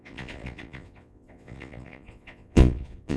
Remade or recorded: remade